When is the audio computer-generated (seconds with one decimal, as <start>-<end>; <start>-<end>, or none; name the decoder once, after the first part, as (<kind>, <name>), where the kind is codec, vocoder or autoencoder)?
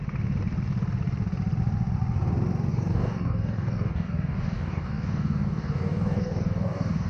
2.7-7.1 (codec, DAC)